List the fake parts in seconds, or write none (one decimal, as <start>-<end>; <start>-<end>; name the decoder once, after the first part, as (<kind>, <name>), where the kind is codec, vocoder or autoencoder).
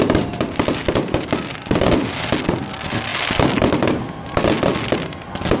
none